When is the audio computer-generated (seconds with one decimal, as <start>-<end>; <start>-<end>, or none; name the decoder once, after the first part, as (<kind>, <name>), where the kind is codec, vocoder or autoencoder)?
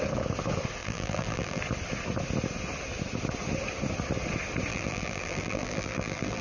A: 0.8-1.6 (vocoder, BigVGAN v2); 4.7-6.4